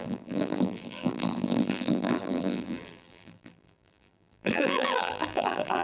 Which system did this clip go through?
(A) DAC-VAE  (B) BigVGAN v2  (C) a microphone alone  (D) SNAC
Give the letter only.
B